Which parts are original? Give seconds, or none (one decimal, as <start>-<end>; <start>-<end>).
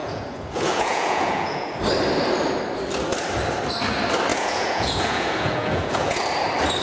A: 1.8-4.3; 6.2-6.8